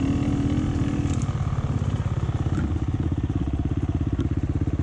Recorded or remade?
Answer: recorded